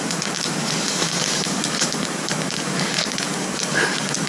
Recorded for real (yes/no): no